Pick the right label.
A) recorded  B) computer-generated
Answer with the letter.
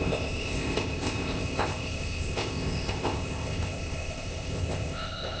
B